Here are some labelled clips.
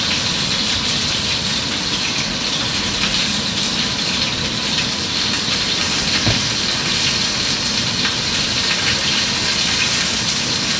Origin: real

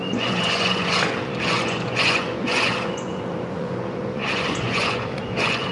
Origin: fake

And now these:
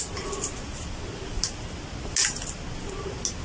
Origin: real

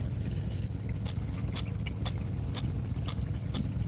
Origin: real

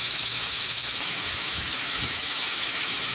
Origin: fake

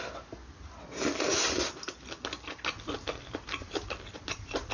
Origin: real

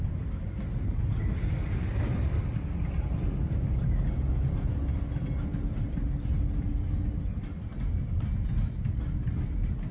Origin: real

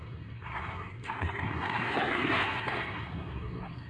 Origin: fake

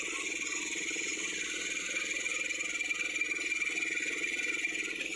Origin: real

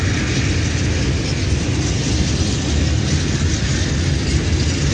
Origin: real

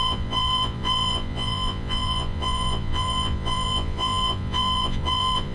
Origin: fake